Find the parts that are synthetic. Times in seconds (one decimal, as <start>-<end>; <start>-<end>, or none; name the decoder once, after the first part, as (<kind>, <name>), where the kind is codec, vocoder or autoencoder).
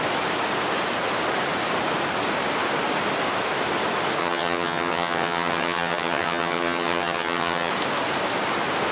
4.2-7.7 (vocoder, HiFi-GAN)